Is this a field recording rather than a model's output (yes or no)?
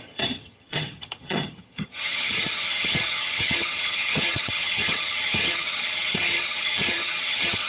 no